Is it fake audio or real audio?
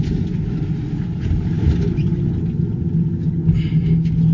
real